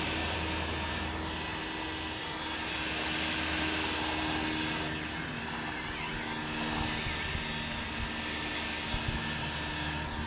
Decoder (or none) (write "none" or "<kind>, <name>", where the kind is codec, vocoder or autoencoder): none